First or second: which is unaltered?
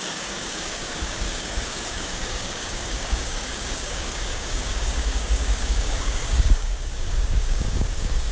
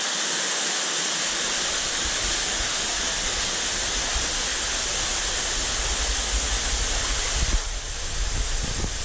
second